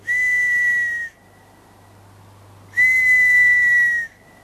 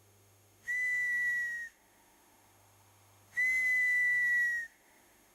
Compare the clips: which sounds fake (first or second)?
second